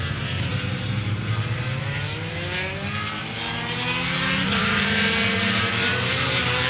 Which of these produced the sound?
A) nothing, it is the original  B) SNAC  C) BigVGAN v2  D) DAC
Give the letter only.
C